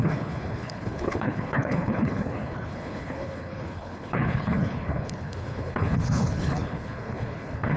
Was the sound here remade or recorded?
remade